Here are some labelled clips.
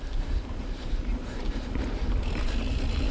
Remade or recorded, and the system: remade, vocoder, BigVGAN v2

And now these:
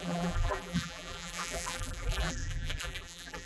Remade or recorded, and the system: remade, vocoder, BigVGAN v2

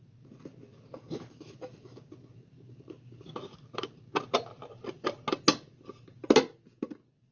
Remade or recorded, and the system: recorded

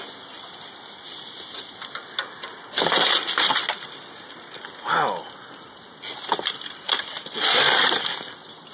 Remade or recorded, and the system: recorded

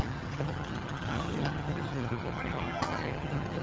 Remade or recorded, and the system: remade, vocoder, HiFi-GAN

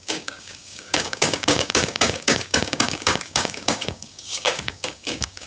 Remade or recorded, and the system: remade, codec, DAC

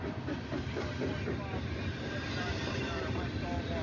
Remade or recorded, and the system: recorded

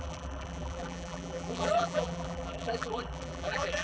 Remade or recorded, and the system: remade, vocoder, BigVGAN v2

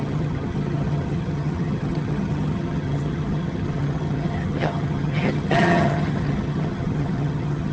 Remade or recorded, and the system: remade, vocoder, HiFi-GAN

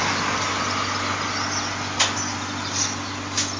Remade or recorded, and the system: recorded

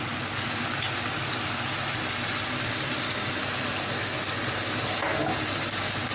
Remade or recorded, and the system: recorded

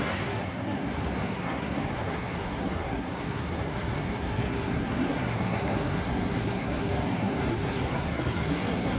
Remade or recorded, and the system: remade, codec, SNAC